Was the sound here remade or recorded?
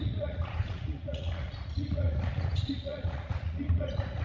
remade